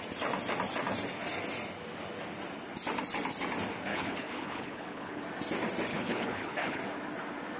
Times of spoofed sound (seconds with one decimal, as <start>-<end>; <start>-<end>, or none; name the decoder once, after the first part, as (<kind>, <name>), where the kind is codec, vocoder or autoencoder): 3.9-5.2 (codec, HILCodec); 5.9-6.8